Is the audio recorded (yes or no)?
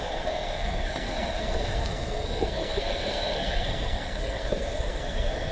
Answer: no